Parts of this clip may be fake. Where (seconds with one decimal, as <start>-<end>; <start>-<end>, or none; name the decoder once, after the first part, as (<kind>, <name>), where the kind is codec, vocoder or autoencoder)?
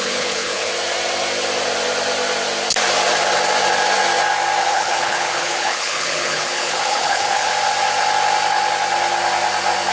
0.0-0.7 (codec, HILCodec); 4.6-7.5